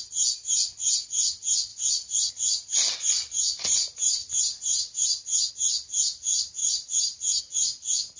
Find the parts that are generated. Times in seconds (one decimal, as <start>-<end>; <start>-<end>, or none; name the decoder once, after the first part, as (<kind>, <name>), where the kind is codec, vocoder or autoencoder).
1.7-2.3 (vocoder, BigVGAN v2); 4.2-5.5; 6.6-7.4